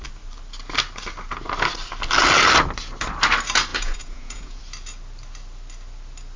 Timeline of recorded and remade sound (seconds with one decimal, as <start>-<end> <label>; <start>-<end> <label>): 0.0-3.7 recorded; 3.7-4.6 remade; 4.6-6.4 recorded